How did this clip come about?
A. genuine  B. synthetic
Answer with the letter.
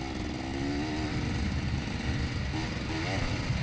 A